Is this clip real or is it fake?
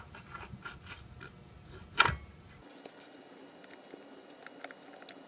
real